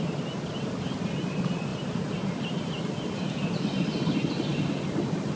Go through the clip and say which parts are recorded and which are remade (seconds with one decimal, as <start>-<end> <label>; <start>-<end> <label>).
0.0-5.4 recorded